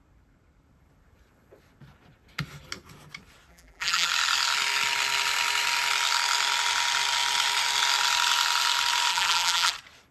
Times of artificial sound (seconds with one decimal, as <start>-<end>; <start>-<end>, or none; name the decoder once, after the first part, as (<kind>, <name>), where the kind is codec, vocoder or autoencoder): 3.5-4.1 (vocoder, BigVGAN v2); 9.1-9.7